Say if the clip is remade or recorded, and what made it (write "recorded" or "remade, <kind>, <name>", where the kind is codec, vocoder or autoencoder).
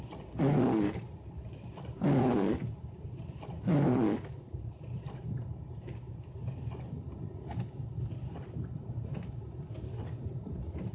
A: recorded